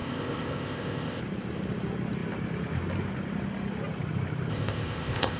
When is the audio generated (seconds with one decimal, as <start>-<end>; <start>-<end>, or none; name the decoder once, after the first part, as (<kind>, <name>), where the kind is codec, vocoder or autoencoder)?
0.0-1.2 (codec, ZipCodec); 4.5-5.4